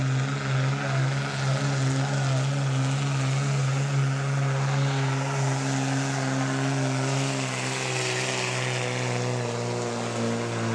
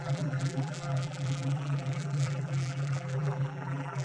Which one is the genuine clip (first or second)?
first